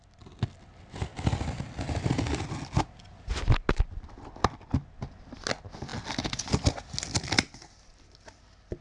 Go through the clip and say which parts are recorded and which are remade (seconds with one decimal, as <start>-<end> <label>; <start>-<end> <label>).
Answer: 0.0-8.8 recorded

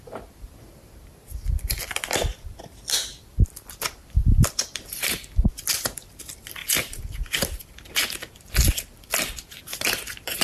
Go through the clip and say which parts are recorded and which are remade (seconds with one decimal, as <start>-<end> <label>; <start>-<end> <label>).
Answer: 0.0-10.4 remade

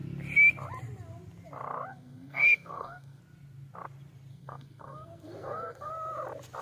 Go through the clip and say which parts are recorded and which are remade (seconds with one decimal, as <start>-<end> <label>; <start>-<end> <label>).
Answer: 0.0-1.9 recorded; 1.9-3.2 remade; 3.2-4.3 recorded; 4.3-5.9 remade; 5.9-6.6 recorded

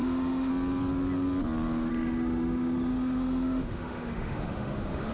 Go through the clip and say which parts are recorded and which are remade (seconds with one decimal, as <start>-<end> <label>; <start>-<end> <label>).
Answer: 0.0-0.5 remade; 0.5-1.9 recorded; 1.9-5.1 remade

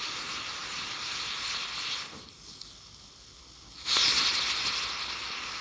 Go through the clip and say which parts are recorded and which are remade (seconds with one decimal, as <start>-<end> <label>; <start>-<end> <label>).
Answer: 0.0-5.6 recorded

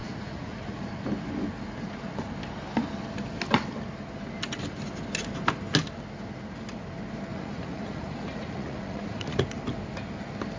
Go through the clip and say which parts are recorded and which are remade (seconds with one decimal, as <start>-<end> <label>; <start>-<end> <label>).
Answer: 0.0-0.9 remade; 0.9-7.3 recorded; 7.3-9.4 remade; 9.4-10.6 recorded

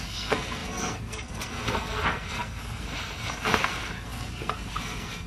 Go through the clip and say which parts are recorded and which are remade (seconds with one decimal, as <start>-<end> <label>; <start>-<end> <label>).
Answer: 0.0-5.3 remade

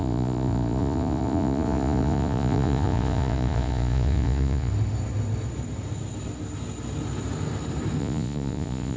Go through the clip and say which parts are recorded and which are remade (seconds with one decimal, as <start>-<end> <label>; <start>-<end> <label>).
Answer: 0.0-4.7 remade; 4.7-8.0 recorded; 8.0-9.0 remade